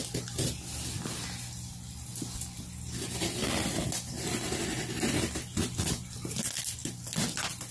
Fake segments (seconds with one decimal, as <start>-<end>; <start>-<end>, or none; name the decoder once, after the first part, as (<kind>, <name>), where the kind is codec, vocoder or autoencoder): none